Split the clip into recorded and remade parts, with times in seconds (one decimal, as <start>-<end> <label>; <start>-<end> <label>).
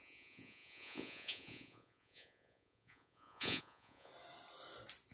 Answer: 0.0-4.1 remade; 4.1-5.1 recorded